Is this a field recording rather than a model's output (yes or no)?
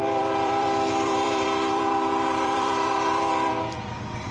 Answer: no